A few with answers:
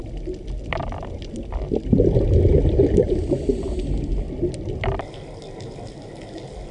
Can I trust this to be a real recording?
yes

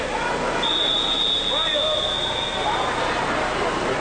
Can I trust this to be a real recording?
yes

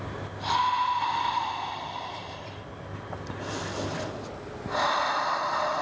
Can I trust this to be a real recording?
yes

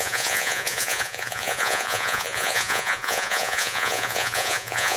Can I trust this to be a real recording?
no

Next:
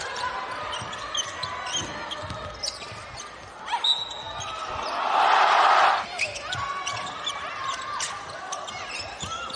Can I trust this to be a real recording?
yes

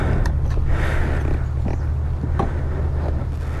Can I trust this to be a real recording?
yes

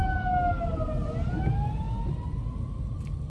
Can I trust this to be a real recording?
yes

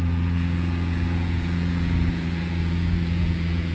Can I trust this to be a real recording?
no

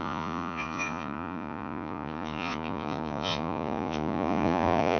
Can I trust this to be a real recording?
no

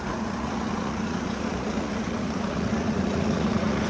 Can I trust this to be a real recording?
no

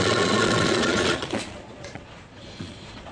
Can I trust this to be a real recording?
no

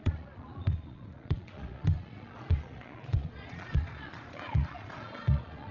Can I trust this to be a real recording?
no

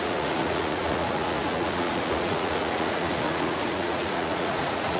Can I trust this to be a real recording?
no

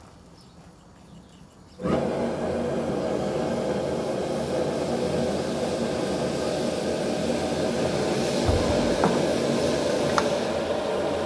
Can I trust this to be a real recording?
yes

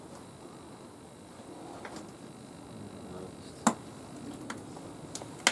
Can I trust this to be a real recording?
yes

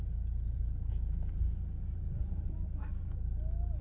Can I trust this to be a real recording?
yes